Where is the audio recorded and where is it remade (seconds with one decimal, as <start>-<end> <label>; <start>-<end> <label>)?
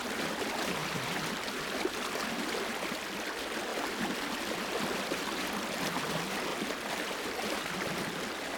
0.0-3.7 recorded; 3.7-6.1 remade; 6.1-6.5 recorded; 6.5-8.0 remade; 8.0-8.6 recorded